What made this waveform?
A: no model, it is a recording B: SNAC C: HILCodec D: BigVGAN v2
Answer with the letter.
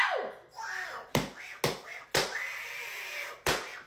A